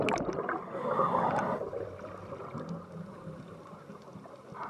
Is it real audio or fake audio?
real